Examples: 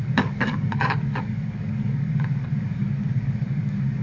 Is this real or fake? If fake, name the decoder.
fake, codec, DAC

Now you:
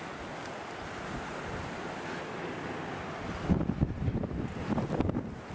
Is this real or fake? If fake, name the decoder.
real